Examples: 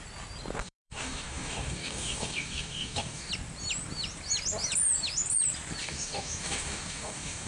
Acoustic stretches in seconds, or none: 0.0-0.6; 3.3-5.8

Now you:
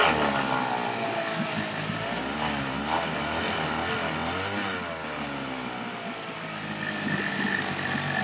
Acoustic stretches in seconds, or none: 0.0-8.2

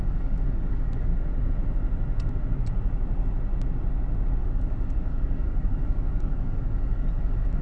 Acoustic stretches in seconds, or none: 1.1-4.4

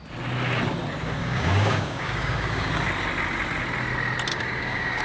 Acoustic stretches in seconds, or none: 0.0-1.2; 2.7-4.3

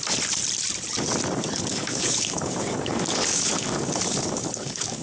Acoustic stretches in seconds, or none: 0.0-1.7

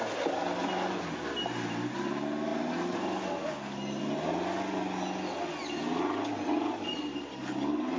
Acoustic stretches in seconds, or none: 0.0-8.0